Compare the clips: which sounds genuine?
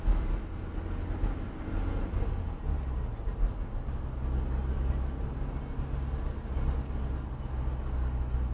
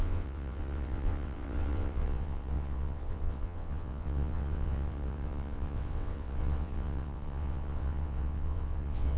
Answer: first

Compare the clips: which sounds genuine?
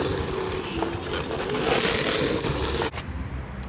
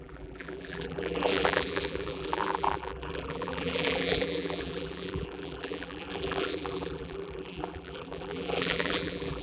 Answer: first